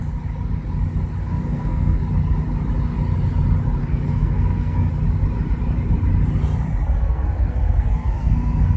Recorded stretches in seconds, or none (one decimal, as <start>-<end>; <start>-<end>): 0.0-1.2; 2.0-3.8; 4.9-7.0